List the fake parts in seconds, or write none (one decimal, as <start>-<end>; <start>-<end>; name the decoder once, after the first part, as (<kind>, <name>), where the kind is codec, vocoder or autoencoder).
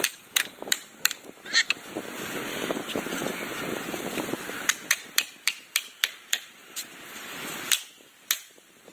0.0-8.9 (vocoder, BigVGAN v2)